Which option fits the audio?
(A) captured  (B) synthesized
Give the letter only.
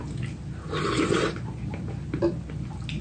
A